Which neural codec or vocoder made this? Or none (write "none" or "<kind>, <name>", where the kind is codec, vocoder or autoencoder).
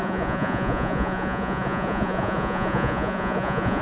vocoder, Vocos